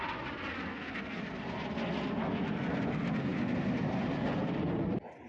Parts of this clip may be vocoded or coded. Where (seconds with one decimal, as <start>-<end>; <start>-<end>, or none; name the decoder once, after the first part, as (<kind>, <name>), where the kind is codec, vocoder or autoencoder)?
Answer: 0.7-1.2 (codec, SNAC)